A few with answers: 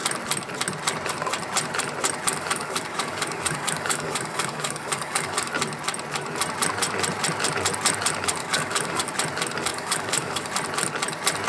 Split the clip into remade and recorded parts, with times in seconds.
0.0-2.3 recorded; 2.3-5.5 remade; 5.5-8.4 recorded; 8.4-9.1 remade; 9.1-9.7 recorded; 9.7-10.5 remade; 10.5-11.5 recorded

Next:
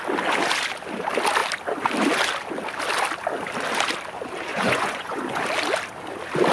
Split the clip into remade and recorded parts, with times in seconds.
0.0-4.5 recorded; 4.5-5.4 remade; 5.4-6.5 recorded

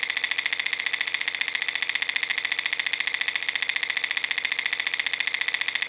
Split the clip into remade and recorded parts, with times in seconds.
0.0-5.9 recorded